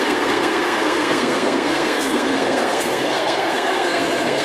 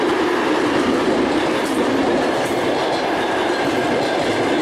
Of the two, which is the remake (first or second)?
first